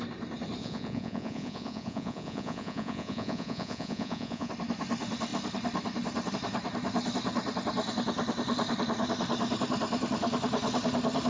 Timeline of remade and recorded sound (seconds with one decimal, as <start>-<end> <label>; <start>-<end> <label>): 0.0-0.6 recorded; 0.6-4.5 remade; 4.5-11.3 recorded